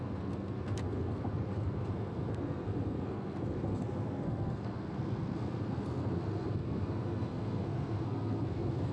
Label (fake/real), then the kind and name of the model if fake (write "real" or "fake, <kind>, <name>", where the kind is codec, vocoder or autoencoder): fake, codec, SNAC